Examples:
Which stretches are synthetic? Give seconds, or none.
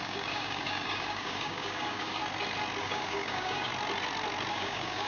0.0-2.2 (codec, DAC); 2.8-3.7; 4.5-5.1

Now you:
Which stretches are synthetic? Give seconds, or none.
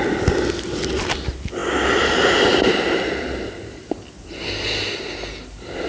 none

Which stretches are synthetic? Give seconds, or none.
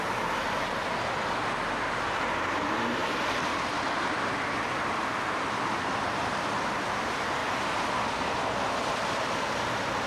3.0-5.0 (vocoder, BigVGAN v2); 7.4-10.1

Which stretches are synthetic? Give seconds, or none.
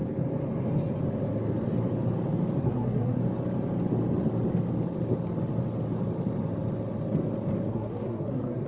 2.6-3.2 (codec, SNAC); 7.7-8.7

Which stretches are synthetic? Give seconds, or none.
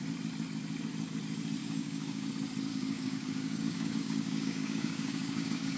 1.6-2.3 (codec, DAC); 2.7-5.8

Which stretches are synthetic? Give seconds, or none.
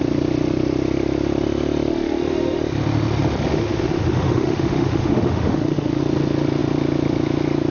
1.9-2.6 (autoencoder, DAC-VAE); 3.5-6.0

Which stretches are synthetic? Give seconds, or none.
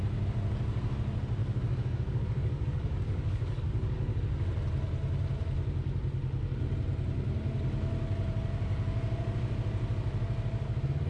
1.4-4.2 (codec, DAC)